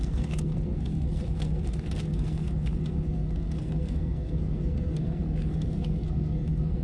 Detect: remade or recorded remade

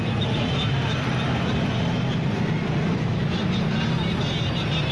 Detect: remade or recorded recorded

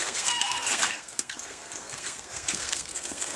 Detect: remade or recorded remade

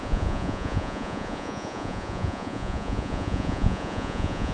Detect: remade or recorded remade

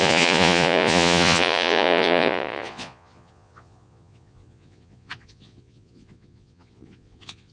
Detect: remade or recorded remade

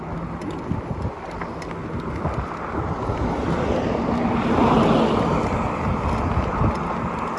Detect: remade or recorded recorded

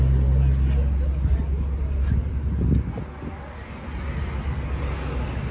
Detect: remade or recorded recorded